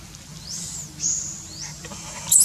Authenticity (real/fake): real